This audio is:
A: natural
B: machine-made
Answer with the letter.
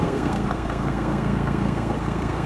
B